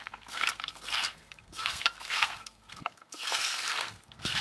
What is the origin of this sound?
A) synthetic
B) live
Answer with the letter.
A